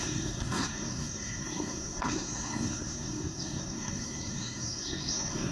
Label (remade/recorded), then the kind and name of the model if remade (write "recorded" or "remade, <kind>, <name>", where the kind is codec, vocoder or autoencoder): remade, codec, SNAC